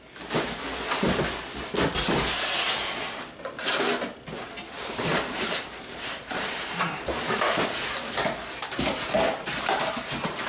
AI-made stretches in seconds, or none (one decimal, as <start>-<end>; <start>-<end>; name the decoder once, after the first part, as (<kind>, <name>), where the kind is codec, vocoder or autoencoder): 5.1-8.9 (vocoder, BigVGAN v2)